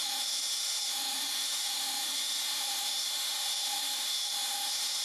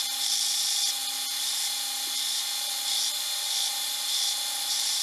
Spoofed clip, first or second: first